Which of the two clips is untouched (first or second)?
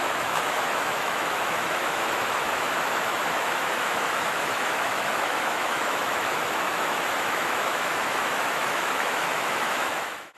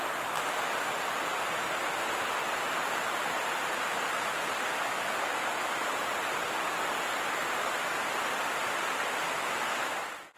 second